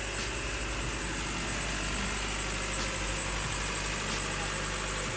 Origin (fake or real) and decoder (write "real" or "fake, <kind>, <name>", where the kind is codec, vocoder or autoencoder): real